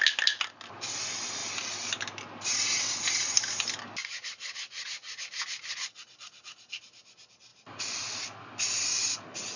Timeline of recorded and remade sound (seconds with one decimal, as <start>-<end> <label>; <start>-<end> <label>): 0.0-4.0 recorded; 4.0-5.2 remade; 5.2-7.5 recorded; 7.5-8.2 remade; 8.2-9.6 recorded